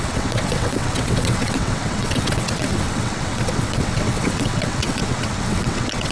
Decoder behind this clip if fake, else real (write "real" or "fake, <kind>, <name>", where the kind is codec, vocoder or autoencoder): fake, vocoder, WaveNeXt